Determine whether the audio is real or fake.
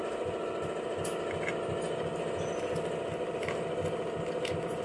real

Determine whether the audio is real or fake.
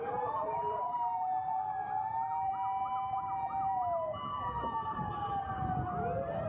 real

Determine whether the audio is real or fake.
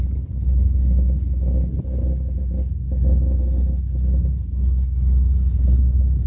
real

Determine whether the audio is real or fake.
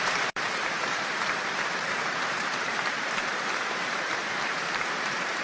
fake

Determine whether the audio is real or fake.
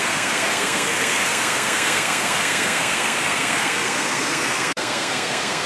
fake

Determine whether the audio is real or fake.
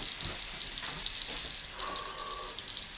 real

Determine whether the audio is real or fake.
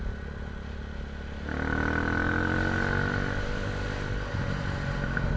real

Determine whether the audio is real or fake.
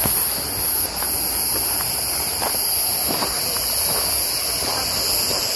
real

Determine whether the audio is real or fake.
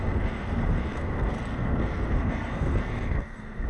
fake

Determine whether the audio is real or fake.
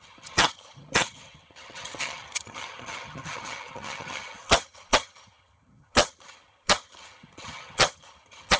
fake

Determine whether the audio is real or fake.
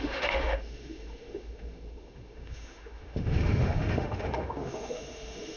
fake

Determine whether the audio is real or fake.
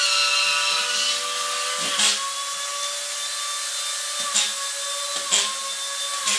real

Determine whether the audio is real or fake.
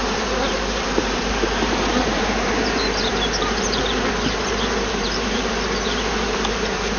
fake